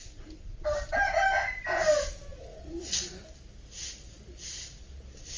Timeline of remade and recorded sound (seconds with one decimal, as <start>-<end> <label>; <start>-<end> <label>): 0.0-5.4 recorded